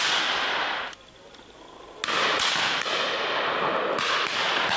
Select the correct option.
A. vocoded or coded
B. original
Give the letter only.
B